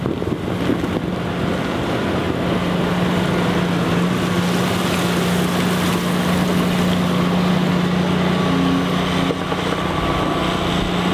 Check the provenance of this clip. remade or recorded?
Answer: recorded